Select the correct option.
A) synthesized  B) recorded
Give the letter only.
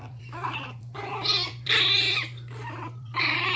A